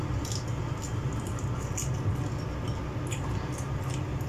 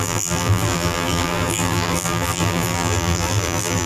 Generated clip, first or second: second